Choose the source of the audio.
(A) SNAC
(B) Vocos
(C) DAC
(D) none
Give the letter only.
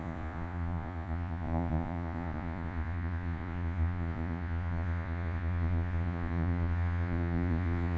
B